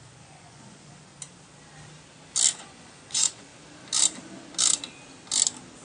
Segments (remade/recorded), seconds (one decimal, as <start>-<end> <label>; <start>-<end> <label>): 0.0-1.1 remade; 1.1-2.5 recorded; 2.5-3.5 remade; 3.5-5.8 recorded